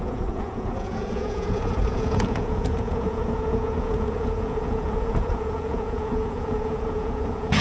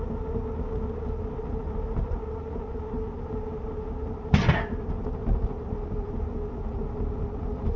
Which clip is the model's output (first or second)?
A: first